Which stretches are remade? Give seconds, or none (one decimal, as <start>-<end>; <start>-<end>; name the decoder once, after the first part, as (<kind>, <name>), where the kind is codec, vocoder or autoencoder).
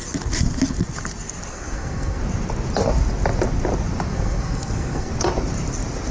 1.5-2.2 (codec, SNAC); 4.1-5.1